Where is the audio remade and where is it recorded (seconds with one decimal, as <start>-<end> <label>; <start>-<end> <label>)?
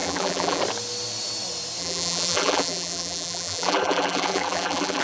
0.0-0.6 remade; 0.6-1.8 recorded; 1.8-5.0 remade